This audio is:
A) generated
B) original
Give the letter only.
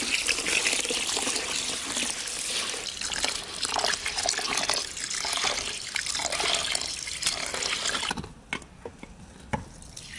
B